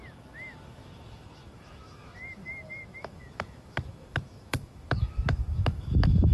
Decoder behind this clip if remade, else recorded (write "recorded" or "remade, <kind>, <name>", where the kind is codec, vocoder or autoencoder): remade, autoencoder, DAC-VAE